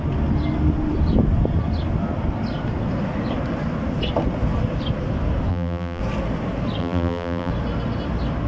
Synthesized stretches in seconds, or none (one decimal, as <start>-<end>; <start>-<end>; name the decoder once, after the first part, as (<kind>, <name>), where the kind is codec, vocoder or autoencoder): 5.5-6.0 (vocoder, BigVGAN v2); 6.8-7.5